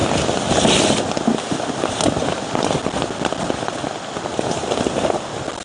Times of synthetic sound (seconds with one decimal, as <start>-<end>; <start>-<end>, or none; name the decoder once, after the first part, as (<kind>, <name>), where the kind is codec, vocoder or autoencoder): none